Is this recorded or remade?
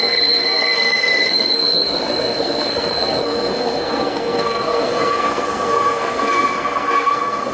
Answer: remade